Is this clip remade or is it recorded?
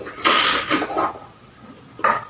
recorded